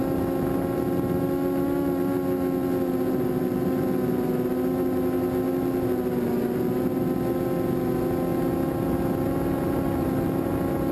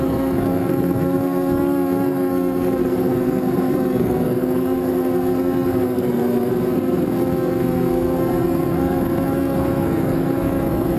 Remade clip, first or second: second